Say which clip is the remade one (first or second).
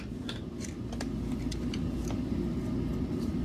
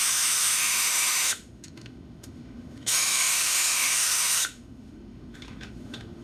second